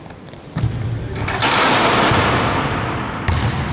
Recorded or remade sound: recorded